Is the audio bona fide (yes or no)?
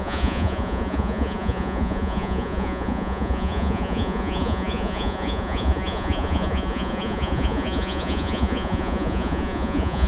no